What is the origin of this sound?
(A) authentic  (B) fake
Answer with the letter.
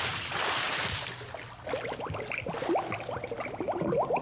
A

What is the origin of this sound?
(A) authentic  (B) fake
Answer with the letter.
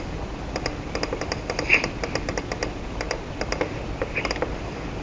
A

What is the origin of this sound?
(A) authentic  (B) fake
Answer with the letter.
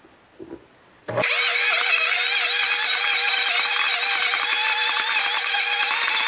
A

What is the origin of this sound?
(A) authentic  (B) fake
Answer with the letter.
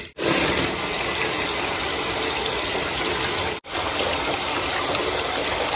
A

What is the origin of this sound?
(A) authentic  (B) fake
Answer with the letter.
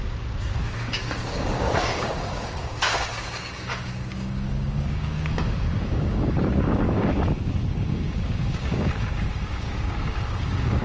B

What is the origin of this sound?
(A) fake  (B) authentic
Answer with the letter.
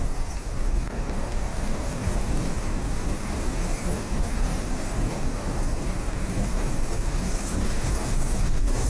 A